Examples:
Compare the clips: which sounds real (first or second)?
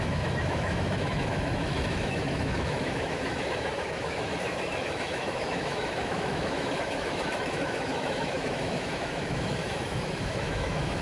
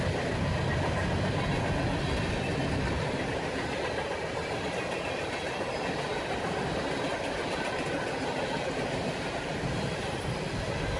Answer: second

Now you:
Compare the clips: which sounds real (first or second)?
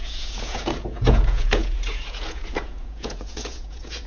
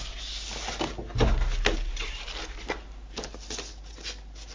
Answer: second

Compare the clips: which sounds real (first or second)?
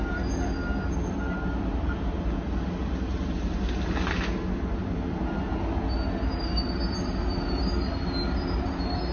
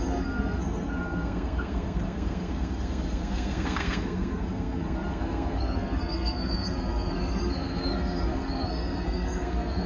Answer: first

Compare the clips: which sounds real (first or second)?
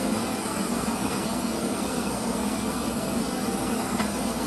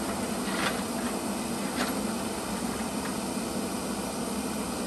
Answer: second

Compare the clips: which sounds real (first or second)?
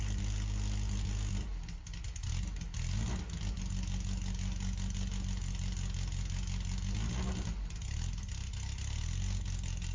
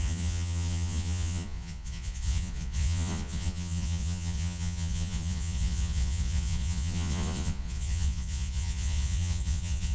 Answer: first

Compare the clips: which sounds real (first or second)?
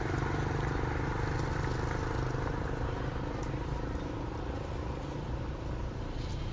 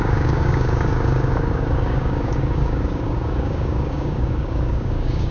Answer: first